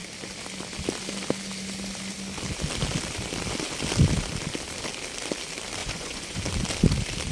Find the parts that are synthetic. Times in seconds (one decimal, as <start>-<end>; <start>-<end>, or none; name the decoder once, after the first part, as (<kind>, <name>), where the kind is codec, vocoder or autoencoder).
5.8-6.4 (vocoder, Vocos)